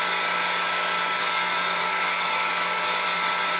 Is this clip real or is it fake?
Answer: fake